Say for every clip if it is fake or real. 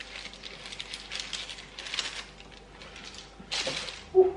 real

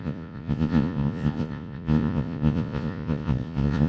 fake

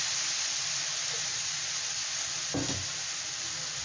real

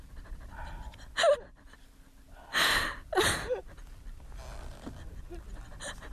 real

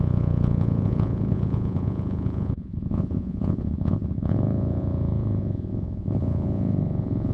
fake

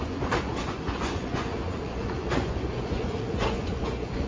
fake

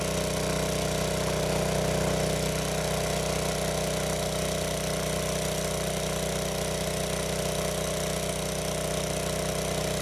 real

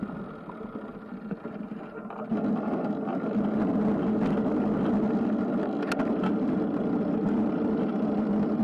real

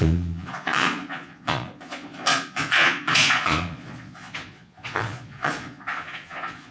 fake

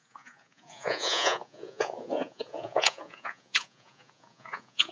fake